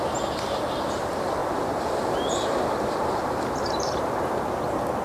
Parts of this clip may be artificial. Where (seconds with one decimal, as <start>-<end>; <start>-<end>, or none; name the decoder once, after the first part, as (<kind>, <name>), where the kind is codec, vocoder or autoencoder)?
1.4-4.4 (vocoder, BigVGAN v2)